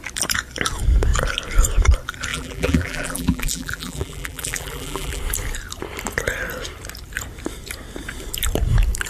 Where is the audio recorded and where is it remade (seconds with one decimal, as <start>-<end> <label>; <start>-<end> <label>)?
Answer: 0.0-2.3 recorded; 2.3-5.2 remade; 5.2-9.1 recorded